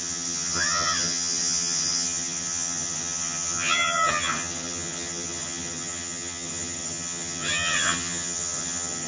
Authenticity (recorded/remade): remade